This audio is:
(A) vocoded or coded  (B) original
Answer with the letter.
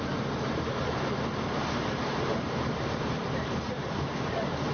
A